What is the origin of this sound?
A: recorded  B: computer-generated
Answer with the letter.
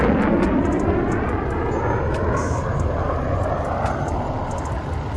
A